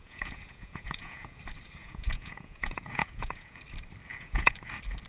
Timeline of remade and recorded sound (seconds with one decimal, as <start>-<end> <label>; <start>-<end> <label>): 0.0-1.4 remade; 1.4-1.8 recorded; 1.8-3.6 remade; 3.6-4.1 recorded; 4.1-4.6 remade; 4.6-5.1 recorded